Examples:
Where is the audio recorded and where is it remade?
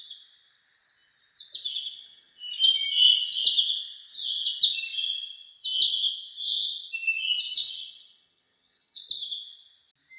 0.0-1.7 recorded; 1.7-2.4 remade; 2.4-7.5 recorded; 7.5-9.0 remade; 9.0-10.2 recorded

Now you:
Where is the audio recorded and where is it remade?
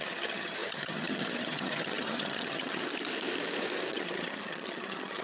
0.0-2.8 remade; 2.8-3.9 recorded; 3.9-5.2 remade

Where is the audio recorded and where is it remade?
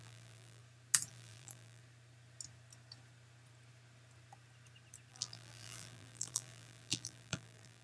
0.0-0.6 remade; 0.6-1.1 recorded; 1.1-1.8 remade; 1.8-5.1 recorded; 5.1-7.8 remade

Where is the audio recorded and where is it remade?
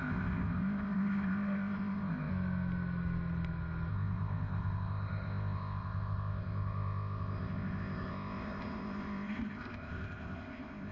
0.0-2.3 remade; 2.3-3.9 recorded; 3.9-10.9 remade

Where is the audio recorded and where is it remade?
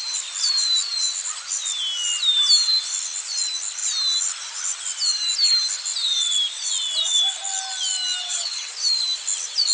0.0-8.2 recorded; 8.2-8.7 remade; 8.7-9.7 recorded